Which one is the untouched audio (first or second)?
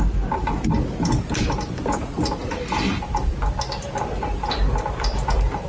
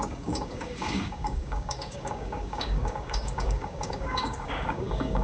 first